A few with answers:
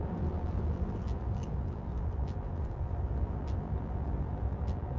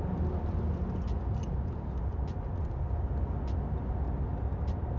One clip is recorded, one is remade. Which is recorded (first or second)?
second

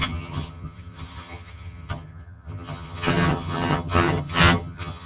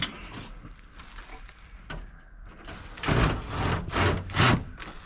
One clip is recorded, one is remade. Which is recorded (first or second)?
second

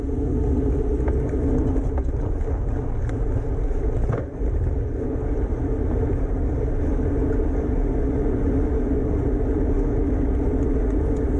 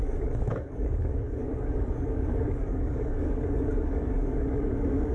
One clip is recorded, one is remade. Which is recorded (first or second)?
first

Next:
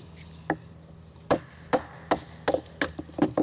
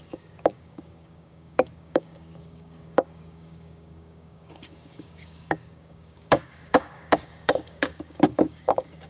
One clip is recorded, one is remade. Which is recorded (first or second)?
first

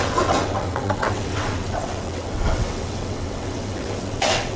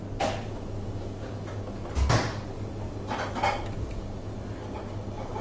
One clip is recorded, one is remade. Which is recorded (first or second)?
second